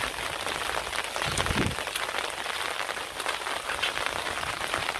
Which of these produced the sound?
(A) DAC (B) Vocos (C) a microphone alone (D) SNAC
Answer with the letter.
C